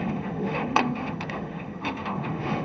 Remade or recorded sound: remade